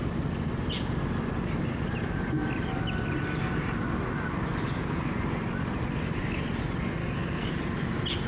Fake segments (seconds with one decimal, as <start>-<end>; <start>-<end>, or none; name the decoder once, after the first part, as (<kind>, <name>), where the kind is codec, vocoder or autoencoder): 7.0-7.5 (codec, SNAC)